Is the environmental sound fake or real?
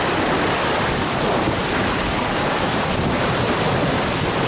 real